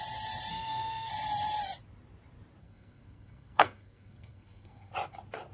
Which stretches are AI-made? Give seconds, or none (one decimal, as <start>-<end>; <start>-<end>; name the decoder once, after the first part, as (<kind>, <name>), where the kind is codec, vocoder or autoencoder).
0.5-1.1 (codec, SNAC); 2.6-4.9